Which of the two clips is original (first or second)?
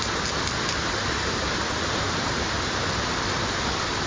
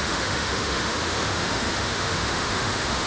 first